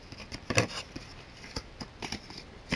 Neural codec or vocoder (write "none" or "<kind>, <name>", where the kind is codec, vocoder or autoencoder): none